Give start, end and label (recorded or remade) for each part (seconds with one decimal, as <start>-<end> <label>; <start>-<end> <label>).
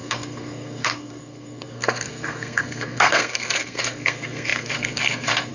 0.0-5.5 remade